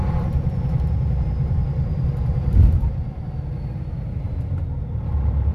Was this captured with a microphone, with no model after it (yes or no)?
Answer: no